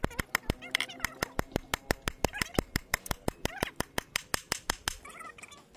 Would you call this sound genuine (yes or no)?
yes